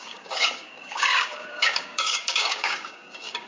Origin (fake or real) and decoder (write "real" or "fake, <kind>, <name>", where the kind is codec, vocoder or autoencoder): fake, codec, DAC